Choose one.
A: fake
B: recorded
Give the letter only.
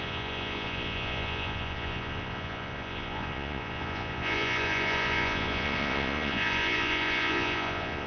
A